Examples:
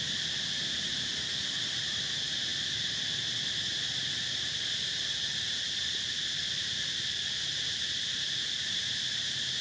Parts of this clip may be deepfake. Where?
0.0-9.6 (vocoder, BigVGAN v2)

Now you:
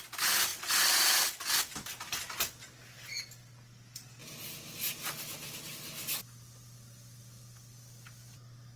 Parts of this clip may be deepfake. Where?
none

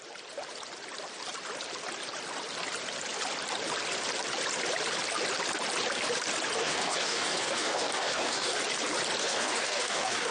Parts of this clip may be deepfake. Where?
6.6-8.6 (codec, DAC); 9.2-10.3

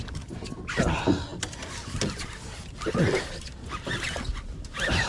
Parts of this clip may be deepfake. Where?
none